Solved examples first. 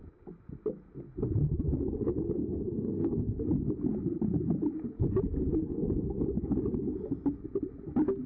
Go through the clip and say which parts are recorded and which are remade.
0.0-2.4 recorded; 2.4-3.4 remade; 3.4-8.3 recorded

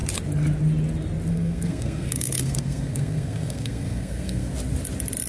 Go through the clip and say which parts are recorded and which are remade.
0.0-1.3 recorded; 1.3-4.5 remade; 4.5-5.3 recorded